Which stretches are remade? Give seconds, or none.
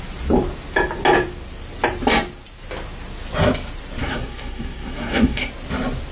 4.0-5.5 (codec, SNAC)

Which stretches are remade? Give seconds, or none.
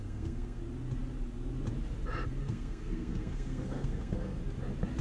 0.0-0.6 (codec, SNAC); 2.4-4.4